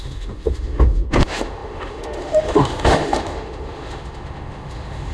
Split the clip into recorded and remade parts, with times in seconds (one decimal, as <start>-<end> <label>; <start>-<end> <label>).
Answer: 0.0-5.1 remade